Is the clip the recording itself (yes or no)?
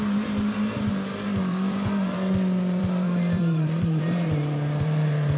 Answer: no